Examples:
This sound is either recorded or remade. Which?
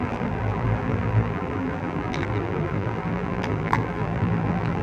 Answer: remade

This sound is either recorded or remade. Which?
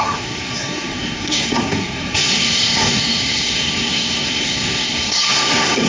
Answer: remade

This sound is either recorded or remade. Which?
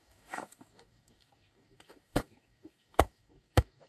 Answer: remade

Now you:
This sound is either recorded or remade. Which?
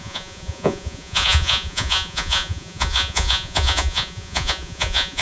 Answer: remade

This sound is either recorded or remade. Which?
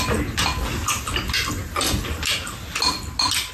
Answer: recorded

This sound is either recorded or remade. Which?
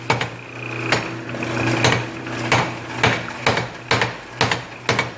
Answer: recorded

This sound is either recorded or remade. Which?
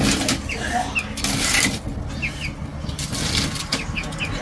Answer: recorded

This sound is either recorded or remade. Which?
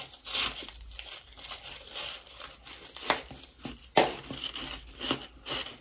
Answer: recorded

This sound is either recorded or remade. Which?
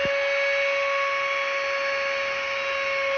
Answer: recorded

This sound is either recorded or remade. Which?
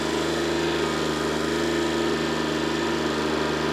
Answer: recorded